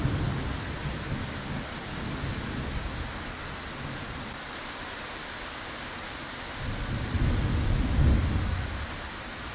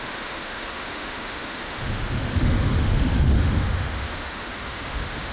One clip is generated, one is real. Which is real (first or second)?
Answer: first